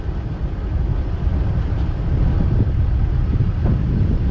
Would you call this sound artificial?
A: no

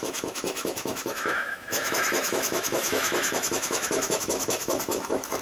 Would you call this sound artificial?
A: yes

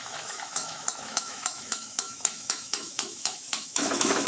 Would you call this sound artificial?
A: yes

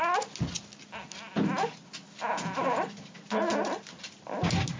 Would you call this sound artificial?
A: no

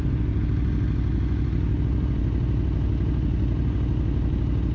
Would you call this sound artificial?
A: no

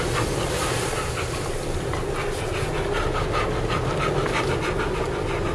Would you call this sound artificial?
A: no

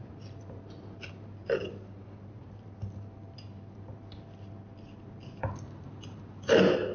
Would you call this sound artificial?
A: no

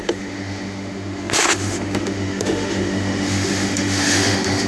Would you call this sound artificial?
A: yes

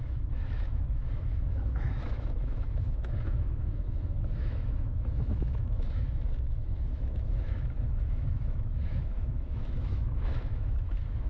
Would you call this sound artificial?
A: yes